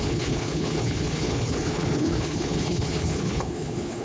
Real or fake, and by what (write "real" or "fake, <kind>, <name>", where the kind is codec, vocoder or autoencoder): fake, codec, HILCodec